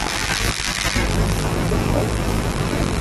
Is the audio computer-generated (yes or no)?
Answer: yes